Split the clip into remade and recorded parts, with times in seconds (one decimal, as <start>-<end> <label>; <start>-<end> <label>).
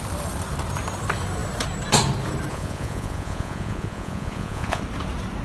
0.0-2.5 recorded; 2.5-4.8 remade; 4.8-5.4 recorded